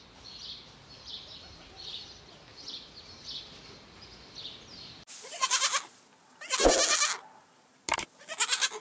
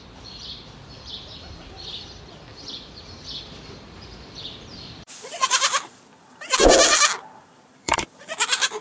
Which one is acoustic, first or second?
first